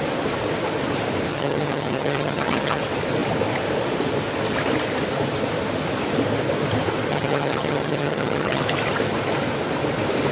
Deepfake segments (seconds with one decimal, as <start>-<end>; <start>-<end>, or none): 1.3-2.8; 7.1-8.6